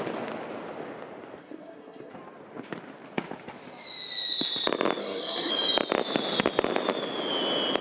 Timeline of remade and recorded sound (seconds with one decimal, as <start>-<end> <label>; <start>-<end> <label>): 0.0-1.4 recorded; 1.4-2.1 remade; 2.1-5.0 recorded; 5.0-5.5 remade; 5.5-7.8 recorded